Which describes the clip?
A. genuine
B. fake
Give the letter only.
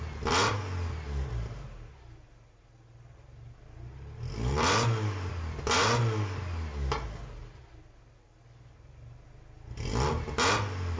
A